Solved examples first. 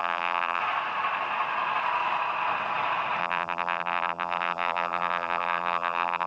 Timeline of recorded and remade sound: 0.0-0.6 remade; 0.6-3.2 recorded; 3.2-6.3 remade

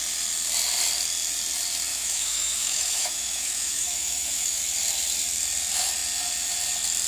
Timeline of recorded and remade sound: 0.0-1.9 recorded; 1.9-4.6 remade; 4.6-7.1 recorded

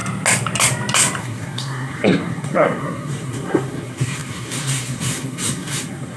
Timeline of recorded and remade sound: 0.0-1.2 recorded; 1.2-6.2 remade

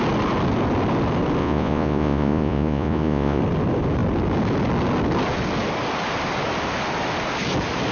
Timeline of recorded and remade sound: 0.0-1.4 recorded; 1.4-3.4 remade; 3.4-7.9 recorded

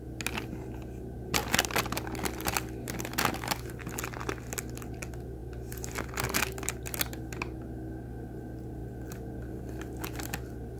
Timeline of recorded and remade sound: 0.0-10.8 recorded